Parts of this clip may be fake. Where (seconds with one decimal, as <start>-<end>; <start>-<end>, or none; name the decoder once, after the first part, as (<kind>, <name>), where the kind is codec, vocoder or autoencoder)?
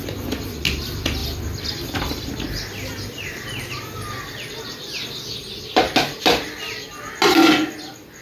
none